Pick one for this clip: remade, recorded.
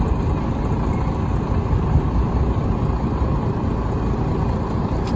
recorded